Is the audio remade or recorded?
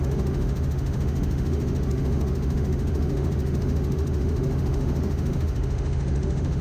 remade